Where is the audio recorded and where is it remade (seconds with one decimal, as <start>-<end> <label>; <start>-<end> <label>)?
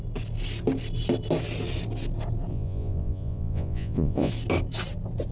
0.0-2.5 recorded; 2.5-4.3 remade; 4.3-5.3 recorded